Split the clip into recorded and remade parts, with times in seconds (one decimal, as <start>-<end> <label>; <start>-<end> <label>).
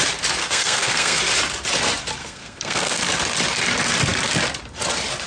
0.0-0.4 recorded; 0.4-1.2 remade; 1.2-2.2 recorded; 2.2-3.0 remade; 3.0-5.3 recorded